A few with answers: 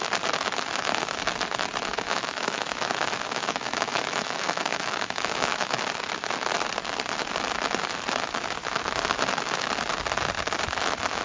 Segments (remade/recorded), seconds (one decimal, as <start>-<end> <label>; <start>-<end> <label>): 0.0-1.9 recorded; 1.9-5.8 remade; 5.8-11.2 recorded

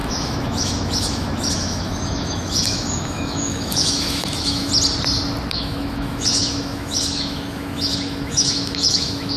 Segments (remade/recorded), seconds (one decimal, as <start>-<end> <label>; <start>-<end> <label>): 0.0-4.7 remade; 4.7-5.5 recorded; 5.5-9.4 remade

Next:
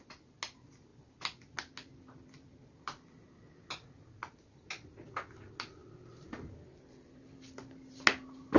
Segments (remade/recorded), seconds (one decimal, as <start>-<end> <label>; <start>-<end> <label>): 0.0-8.6 recorded

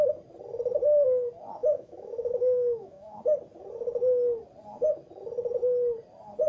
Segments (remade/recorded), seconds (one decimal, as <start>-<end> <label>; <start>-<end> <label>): 0.0-1.6 recorded; 1.6-3.2 remade; 3.2-6.5 recorded

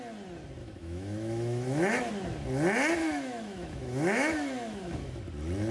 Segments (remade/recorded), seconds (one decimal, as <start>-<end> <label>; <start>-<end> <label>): 0.0-0.6 recorded; 0.6-2.1 remade; 2.1-3.0 recorded; 3.0-5.2 remade; 5.2-5.7 recorded

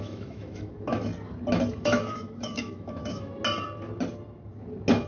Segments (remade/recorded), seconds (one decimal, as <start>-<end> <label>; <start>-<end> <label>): 0.0-1.1 remade; 1.1-1.8 recorded; 1.8-3.3 remade; 3.3-5.1 recorded

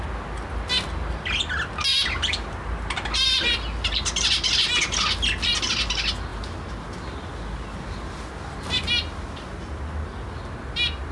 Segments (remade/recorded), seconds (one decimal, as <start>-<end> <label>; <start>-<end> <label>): 0.0-11.1 recorded

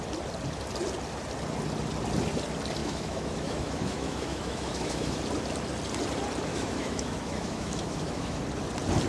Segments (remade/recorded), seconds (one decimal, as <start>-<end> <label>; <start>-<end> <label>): 0.0-2.8 recorded; 2.8-5.2 remade; 5.2-6.5 recorded; 6.5-8.4 remade; 8.4-9.1 recorded